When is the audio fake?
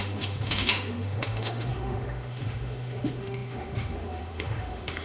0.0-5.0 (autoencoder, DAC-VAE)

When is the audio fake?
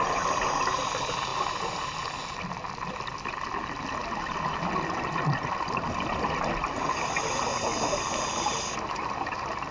none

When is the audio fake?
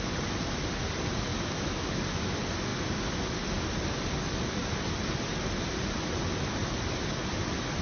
1.3-2.0 (autoencoder, DAC-VAE)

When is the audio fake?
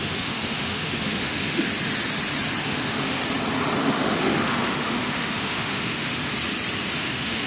0.0-1.7 (autoencoder, DAC-VAE); 2.6-3.2; 3.8-6.3; 7.0-7.5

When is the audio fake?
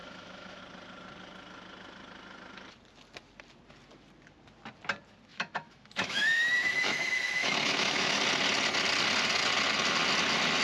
0.0-0.6 (autoencoder, DAC-VAE); 5.3-8.2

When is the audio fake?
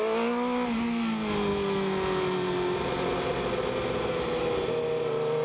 none